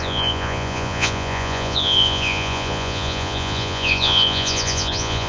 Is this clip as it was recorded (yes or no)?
no